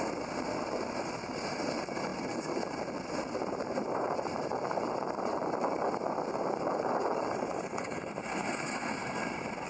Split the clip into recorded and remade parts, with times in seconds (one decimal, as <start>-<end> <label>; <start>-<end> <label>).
0.0-9.7 remade